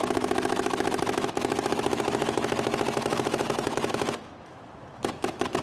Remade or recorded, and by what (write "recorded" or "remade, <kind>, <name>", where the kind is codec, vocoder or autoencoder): remade, autoencoder, DAC-VAE